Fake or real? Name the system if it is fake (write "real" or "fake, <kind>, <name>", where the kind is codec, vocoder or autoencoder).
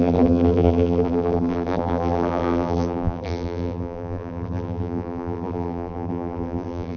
fake, vocoder, BigVGAN v2